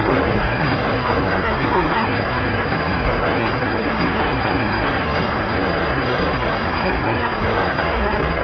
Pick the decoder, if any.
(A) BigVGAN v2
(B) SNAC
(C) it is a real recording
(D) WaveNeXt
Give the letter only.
B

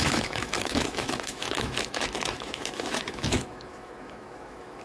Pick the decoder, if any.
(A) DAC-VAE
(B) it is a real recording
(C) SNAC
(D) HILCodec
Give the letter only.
A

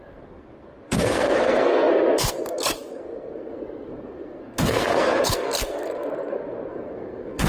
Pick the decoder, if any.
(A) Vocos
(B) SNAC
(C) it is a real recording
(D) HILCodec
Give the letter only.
B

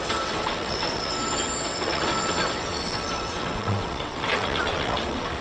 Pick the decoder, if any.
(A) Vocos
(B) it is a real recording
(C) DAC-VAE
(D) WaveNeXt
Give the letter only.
D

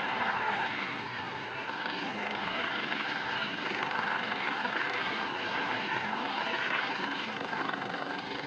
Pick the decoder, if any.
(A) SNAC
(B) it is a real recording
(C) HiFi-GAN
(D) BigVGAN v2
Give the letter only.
A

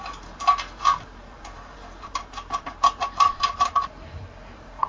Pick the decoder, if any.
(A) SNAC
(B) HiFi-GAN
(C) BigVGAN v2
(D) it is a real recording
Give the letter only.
C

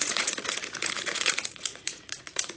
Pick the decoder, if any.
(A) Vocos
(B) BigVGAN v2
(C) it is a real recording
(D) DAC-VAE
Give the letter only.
A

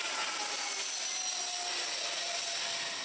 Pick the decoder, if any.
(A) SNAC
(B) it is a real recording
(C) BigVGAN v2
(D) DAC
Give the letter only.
B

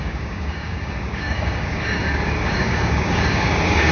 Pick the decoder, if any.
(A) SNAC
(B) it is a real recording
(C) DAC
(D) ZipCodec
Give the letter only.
C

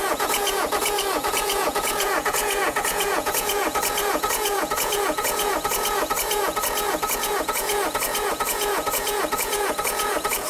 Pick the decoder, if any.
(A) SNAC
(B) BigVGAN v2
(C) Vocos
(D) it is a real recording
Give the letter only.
C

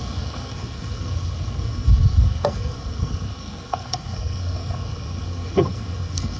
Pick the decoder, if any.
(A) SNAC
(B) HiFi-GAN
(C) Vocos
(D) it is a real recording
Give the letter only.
A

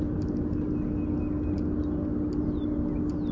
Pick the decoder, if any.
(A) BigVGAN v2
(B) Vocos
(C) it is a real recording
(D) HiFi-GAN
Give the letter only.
C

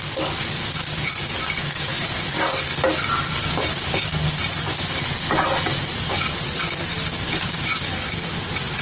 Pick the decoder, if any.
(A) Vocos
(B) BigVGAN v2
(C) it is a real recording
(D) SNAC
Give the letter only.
C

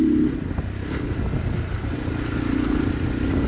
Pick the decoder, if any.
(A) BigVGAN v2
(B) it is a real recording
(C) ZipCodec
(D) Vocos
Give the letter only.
B